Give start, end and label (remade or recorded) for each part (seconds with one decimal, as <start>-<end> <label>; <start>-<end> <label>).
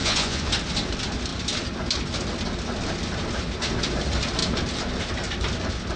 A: 0.0-0.5 remade; 0.5-6.0 recorded